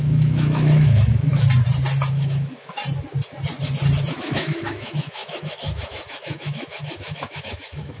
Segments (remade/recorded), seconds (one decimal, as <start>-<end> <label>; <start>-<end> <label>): 0.0-1.3 remade; 1.3-2.1 recorded; 2.1-2.8 remade; 2.8-4.1 recorded; 4.1-8.0 remade